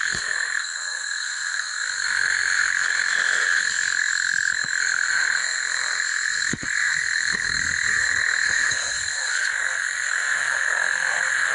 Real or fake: fake